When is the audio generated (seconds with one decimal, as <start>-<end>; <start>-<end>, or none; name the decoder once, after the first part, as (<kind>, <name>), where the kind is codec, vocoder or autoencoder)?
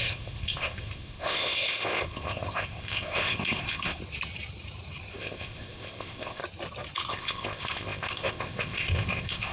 0.0-4.0 (codec, ZipCodec); 5.1-6.4; 7.1-9.5